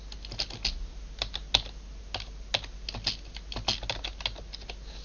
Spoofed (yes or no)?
no